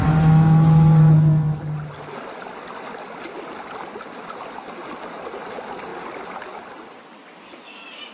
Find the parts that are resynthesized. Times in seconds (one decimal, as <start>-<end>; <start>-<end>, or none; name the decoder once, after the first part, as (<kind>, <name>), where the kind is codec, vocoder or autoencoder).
none